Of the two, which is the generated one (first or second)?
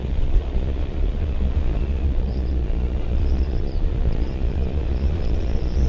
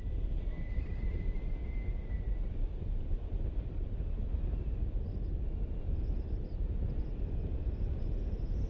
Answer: first